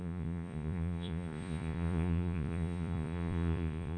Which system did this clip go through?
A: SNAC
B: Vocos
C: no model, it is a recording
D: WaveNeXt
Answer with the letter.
B